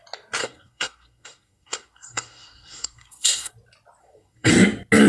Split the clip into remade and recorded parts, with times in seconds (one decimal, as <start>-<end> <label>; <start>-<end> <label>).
0.0-0.4 recorded; 0.4-3.5 remade; 3.5-4.0 recorded; 4.0-4.5 remade; 4.5-5.1 recorded